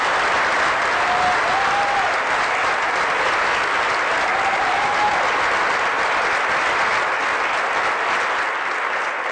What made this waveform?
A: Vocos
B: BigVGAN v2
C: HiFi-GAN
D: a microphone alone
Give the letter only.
D